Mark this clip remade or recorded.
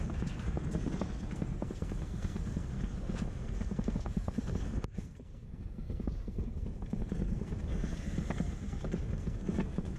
remade